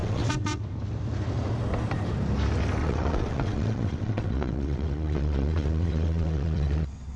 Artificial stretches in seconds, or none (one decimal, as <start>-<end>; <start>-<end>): 0.0-0.6; 2.8-7.2